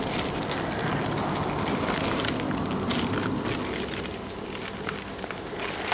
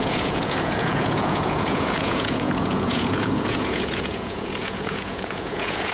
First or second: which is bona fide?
first